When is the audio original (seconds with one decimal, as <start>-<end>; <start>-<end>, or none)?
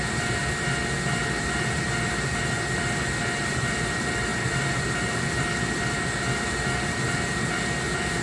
0.4-1.4